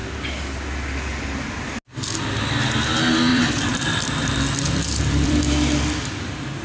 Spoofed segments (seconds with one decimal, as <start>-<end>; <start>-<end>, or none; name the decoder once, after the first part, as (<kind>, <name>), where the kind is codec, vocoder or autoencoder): 3.3-5.4 (vocoder, BigVGAN v2)